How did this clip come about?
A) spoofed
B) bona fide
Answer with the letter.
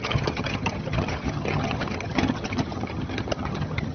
A